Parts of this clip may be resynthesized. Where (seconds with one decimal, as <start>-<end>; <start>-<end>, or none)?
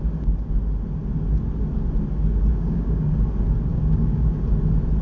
2.5-3.1; 3.7-4.4